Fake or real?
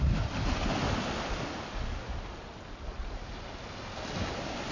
real